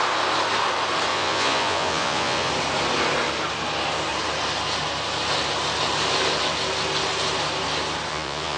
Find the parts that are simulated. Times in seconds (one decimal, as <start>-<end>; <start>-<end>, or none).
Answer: 1.1-2.5; 8.1-8.6